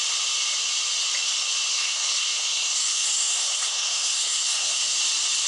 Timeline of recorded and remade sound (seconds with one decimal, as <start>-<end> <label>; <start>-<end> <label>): 0.0-1.7 recorded; 1.7-5.0 remade; 5.0-5.5 recorded